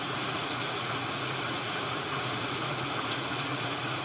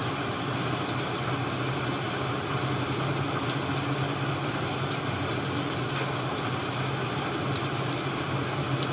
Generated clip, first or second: first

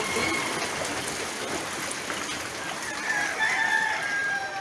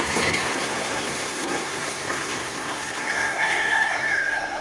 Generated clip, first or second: second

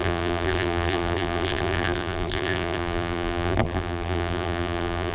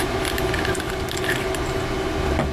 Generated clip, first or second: first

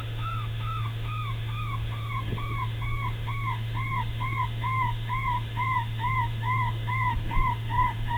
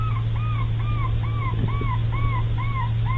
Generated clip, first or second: first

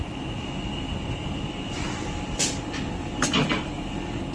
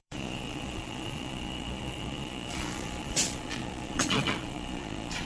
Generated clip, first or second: second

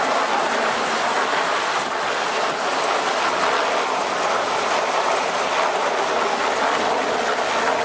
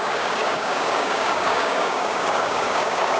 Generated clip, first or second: second